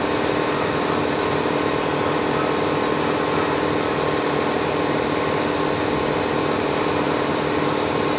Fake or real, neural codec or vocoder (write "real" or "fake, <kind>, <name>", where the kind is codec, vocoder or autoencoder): real